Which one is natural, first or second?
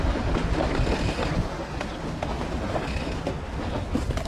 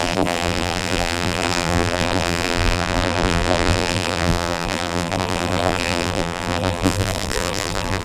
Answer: first